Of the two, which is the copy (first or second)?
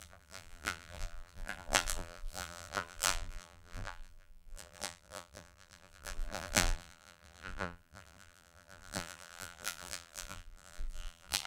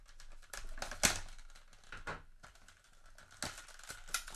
first